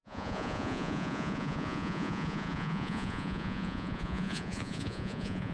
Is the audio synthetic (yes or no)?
yes